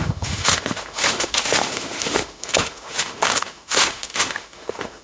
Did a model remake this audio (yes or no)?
yes